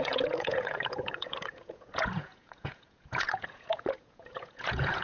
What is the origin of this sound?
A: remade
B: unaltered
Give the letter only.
A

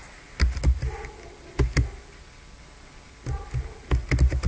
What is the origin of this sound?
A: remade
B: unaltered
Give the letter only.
B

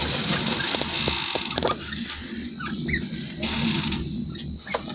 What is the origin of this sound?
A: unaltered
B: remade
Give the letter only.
A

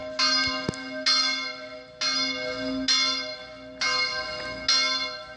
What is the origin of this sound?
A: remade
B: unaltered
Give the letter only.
B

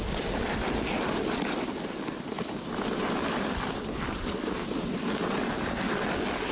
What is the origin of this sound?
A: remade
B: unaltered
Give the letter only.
B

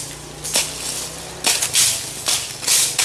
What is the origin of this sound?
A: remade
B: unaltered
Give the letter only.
B